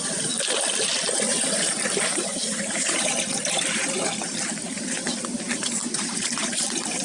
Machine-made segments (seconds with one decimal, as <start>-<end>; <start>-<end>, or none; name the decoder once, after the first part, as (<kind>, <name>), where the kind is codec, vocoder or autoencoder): 1.3-4.0 (vocoder, BigVGAN v2); 5.8-6.6